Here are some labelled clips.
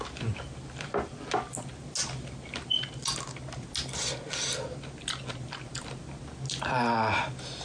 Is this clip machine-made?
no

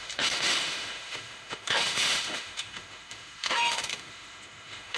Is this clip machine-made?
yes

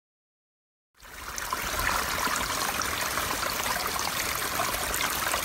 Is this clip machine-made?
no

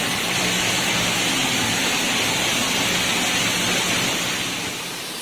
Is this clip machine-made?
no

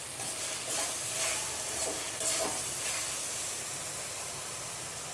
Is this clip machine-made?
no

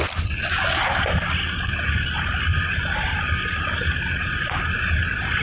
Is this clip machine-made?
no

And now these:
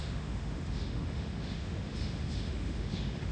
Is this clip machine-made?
yes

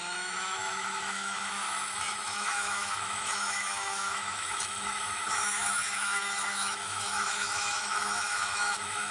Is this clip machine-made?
yes